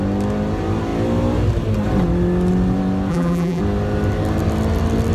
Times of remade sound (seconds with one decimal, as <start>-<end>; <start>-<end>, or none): 3.1-3.6